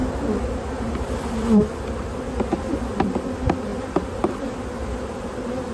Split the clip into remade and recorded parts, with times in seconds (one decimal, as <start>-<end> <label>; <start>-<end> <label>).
0.0-5.7 recorded